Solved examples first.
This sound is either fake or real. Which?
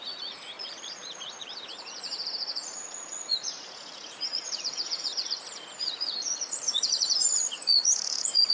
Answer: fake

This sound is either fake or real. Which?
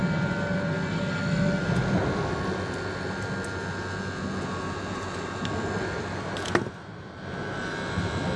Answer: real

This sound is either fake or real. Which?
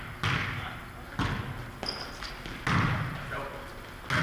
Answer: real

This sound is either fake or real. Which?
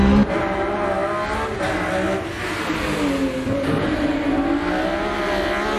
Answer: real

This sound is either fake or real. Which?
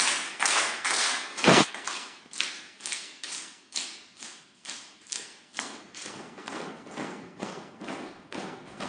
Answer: fake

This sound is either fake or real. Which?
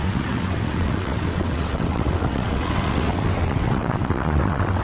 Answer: fake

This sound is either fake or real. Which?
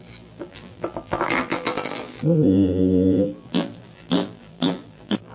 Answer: fake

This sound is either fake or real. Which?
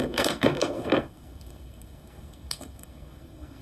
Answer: fake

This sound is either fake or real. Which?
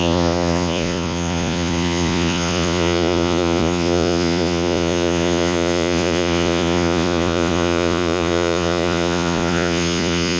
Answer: fake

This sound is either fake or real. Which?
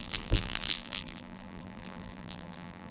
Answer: fake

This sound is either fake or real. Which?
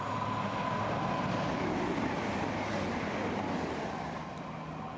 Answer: real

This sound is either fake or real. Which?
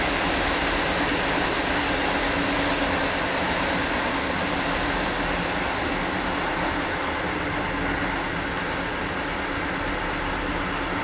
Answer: real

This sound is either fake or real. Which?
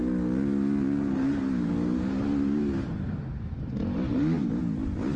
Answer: real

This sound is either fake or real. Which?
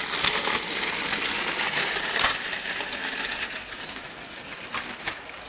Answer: real